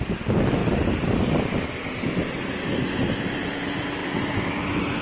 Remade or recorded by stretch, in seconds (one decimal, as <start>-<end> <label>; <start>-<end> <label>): 0.0-0.6 recorded; 0.6-1.9 remade; 1.9-4.0 recorded; 4.0-4.5 remade; 4.5-5.0 recorded